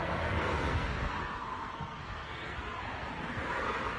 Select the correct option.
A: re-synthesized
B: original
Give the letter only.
A